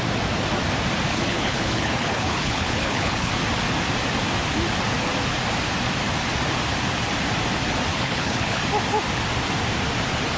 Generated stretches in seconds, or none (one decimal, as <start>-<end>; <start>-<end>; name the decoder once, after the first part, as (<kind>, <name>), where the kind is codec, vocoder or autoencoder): 1.1-3.3 (codec, HILCodec); 7.9-8.6